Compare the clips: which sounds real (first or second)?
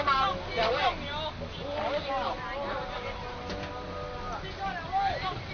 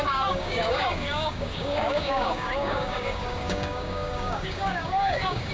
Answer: first